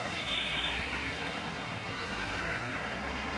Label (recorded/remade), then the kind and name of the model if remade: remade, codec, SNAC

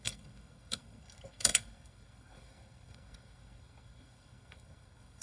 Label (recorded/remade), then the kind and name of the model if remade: remade, codec, SNAC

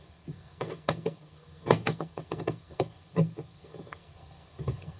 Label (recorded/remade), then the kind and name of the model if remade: remade, codec, SNAC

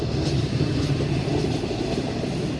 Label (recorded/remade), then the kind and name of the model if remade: recorded